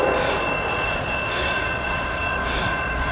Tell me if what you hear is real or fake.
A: fake